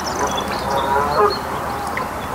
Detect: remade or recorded recorded